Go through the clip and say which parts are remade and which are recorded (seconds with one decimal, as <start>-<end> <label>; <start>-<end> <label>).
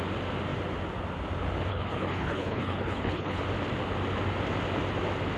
0.0-1.7 recorded; 1.7-3.4 remade; 3.4-5.4 recorded